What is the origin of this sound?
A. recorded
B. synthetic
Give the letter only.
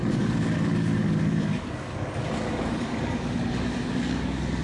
B